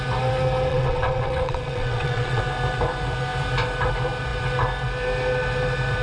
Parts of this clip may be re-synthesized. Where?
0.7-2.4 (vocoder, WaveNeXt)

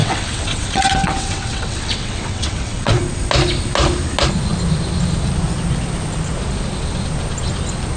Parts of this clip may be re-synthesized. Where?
0.0-3.0 (vocoder, WaveNeXt)

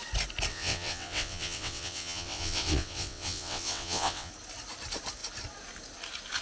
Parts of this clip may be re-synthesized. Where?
0.5-4.3 (vocoder, WaveNeXt)

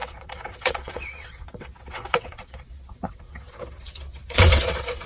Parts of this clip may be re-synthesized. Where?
0.0-5.1 (vocoder, WaveNeXt)

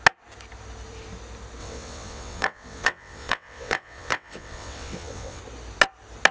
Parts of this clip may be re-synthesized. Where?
1.6-5.4 (vocoder, WaveNeXt)

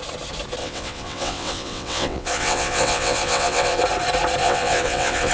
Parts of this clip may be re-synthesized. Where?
0.6-3.8 (vocoder, WaveNeXt); 4.4-5.3